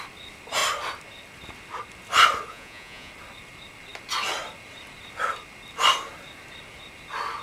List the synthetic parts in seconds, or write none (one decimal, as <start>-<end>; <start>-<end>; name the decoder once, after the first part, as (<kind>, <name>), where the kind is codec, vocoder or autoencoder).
2.5-3.1 (vocoder, Vocos)

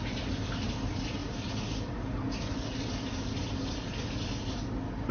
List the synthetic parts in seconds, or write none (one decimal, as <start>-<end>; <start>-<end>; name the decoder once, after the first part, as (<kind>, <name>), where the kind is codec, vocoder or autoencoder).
none

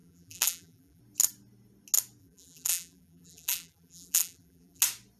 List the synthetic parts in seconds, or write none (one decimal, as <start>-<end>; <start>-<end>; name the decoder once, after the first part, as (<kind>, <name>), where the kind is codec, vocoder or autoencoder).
0.0-1.0 (vocoder, BigVGAN v2); 2.2-4.8

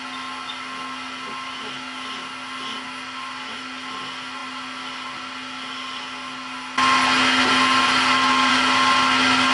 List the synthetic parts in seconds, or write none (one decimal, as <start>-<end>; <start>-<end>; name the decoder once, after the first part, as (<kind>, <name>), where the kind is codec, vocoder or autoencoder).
none

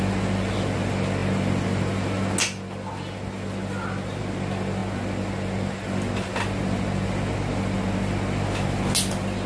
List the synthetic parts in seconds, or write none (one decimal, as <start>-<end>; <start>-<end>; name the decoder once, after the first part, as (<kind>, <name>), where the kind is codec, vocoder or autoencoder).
none